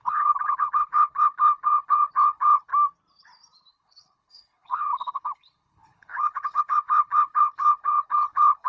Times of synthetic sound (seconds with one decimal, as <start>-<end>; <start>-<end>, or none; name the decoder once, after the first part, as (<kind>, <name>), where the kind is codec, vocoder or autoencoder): 0.0-2.7 (codec, HILCodec); 3.7-8.7

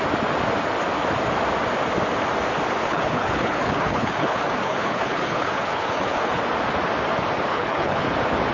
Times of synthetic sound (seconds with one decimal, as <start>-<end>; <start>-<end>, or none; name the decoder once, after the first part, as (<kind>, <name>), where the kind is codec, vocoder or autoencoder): 2.8-6.4 (codec, HILCodec); 7.5-8.1

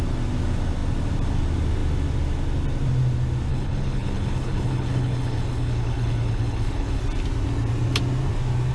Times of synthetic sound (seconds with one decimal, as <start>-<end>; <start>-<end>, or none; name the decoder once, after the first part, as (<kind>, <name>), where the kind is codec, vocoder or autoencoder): 3.5-7.0 (codec, HILCodec)

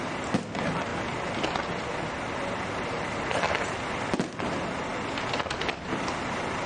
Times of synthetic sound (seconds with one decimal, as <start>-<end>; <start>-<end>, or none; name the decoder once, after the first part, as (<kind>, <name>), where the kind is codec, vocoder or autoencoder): none